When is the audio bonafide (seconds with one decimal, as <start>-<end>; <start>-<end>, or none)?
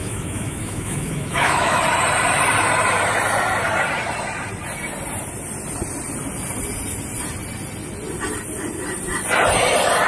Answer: 1.8-10.1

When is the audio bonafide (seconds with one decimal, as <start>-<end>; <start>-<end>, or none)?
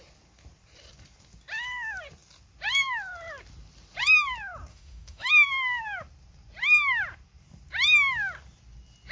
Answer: 0.0-4.7; 5.3-9.1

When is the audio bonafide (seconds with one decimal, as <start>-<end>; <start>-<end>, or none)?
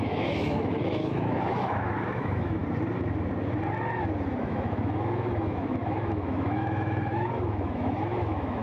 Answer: 2.6-4.4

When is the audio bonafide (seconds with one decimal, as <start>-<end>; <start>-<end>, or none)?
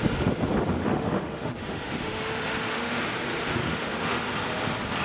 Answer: 0.0-0.8; 3.0-3.6; 4.3-5.0